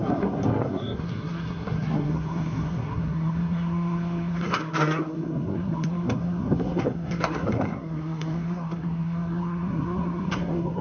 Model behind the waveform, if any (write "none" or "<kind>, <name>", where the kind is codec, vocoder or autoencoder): codec, SNAC